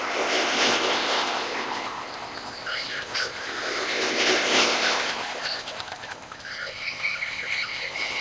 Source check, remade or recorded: remade